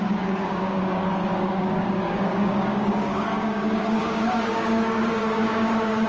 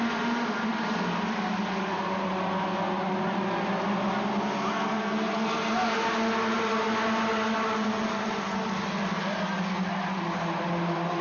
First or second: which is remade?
first